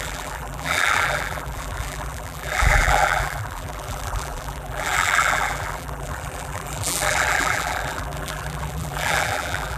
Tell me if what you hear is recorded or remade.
remade